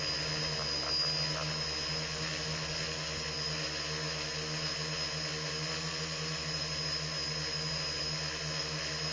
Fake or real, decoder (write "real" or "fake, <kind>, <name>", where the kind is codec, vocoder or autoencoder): real